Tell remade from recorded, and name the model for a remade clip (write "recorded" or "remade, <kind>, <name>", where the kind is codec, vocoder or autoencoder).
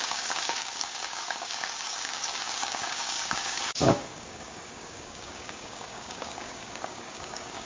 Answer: remade, codec, DAC